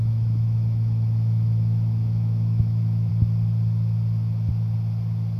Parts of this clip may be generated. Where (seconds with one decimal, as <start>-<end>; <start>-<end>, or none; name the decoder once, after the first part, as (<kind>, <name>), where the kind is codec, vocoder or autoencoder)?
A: 0.0-3.1 (autoencoder, DAC-VAE)